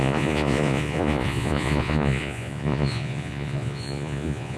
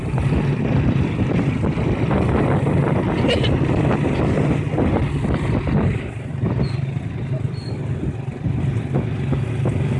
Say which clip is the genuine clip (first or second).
second